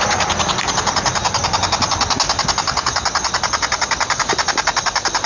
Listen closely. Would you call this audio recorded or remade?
recorded